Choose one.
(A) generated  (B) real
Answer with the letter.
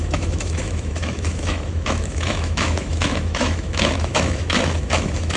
A